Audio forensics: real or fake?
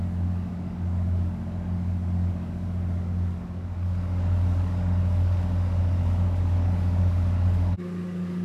fake